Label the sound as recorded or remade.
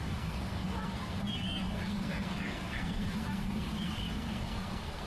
remade